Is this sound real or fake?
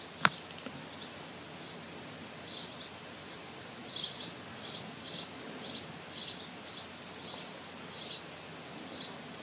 real